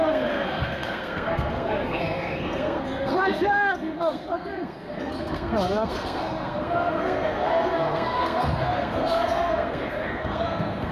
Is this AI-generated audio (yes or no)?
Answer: yes